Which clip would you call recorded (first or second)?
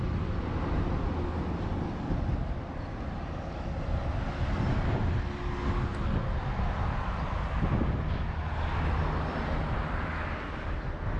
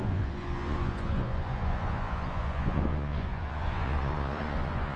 first